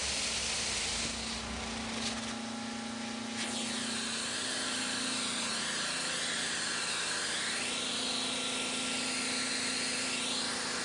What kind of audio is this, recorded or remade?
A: recorded